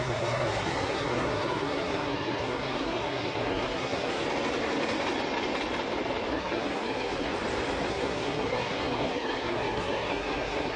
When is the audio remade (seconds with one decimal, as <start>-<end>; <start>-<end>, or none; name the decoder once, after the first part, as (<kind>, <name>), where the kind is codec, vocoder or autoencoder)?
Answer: 0.0-4.2 (codec, SNAC); 6.3-7.3; 7.9-10.8